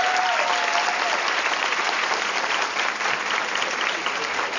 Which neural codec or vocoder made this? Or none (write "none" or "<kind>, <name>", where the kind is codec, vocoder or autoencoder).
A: none